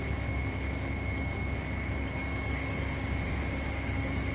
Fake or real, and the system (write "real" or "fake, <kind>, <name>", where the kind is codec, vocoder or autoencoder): fake, codec, DAC